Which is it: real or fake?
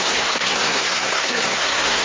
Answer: fake